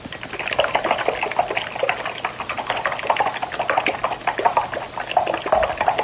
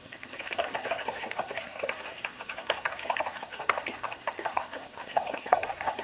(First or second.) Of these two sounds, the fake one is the second